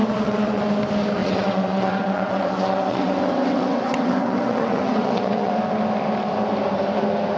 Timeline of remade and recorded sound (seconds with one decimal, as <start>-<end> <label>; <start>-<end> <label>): 0.0-0.6 remade; 0.6-1.2 recorded; 1.2-5.5 remade; 5.5-7.4 recorded